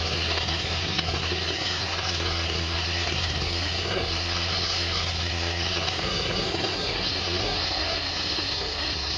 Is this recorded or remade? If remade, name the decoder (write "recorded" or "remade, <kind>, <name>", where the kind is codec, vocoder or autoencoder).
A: remade, codec, SNAC